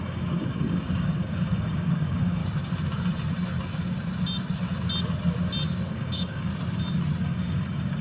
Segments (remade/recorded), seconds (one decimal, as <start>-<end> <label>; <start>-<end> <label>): 0.0-2.4 remade; 2.4-5.9 recorded; 5.9-6.5 remade; 6.5-7.2 recorded; 7.2-8.0 remade